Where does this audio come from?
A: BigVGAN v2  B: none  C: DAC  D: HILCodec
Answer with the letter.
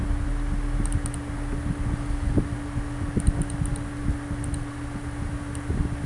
B